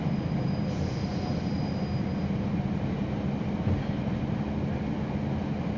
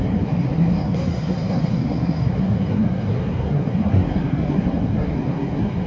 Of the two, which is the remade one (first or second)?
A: second